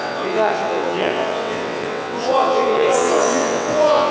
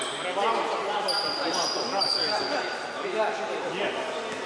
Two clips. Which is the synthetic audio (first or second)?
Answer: first